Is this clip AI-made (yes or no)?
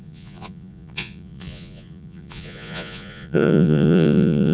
yes